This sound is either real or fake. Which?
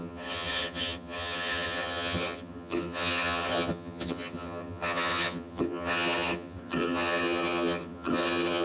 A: fake